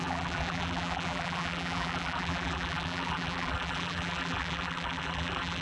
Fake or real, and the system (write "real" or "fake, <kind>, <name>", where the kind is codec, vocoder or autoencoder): fake, vocoder, BigVGAN v2